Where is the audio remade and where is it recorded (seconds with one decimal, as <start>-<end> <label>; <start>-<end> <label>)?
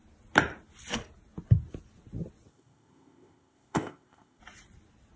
0.0-2.5 recorded; 2.5-4.4 remade; 4.4-5.2 recorded